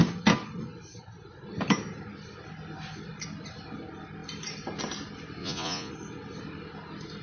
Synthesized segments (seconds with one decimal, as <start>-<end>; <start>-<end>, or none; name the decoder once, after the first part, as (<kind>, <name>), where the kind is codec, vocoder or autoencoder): 5.4-5.9 (vocoder, Vocos)